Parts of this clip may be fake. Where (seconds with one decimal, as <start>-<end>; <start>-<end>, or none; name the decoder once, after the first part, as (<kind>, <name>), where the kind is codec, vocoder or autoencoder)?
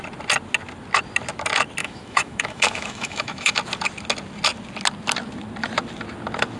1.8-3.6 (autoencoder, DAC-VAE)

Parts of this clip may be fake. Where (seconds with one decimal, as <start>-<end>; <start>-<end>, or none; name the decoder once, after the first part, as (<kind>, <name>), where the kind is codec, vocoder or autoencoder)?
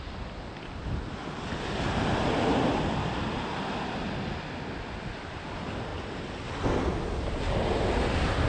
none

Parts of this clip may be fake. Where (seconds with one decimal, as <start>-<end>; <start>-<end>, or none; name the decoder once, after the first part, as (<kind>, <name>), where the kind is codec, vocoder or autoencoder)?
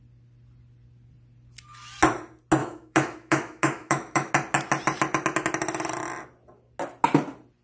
2.6-4.3 (autoencoder, DAC-VAE)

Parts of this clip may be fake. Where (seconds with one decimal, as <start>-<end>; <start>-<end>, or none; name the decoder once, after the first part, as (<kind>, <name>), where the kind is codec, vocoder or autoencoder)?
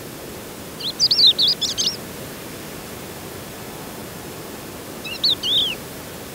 none